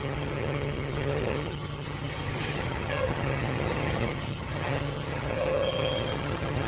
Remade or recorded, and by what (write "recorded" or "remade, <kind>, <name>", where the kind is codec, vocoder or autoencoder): remade, vocoder, HiFi-GAN